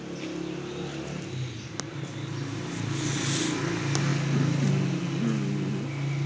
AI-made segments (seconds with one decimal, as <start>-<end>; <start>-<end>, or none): none